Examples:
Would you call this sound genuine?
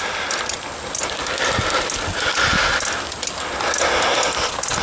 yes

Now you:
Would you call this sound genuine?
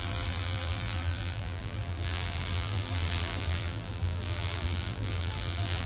no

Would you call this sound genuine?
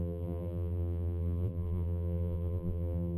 no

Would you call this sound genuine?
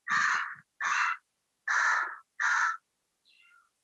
yes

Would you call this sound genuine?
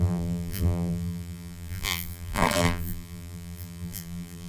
no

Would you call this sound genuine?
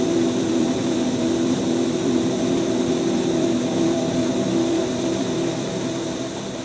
no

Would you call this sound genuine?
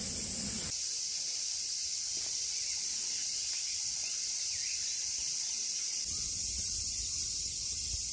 no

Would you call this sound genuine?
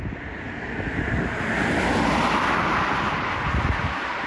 yes